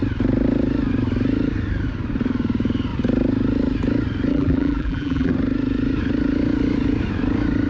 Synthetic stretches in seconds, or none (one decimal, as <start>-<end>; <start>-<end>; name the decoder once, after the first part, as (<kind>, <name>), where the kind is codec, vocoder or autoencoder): 4.3-5.3 (vocoder, BigVGAN v2)